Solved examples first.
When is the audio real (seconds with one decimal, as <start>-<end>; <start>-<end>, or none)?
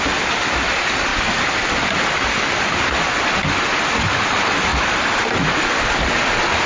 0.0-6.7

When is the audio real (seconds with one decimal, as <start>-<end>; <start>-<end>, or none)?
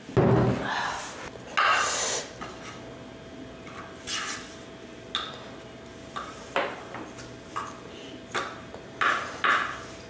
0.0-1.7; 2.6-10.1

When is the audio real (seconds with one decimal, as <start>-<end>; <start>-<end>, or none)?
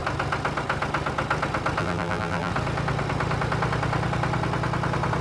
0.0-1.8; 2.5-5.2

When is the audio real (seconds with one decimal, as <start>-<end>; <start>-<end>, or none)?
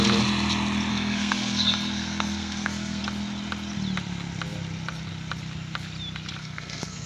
0.0-0.9; 3.0-6.4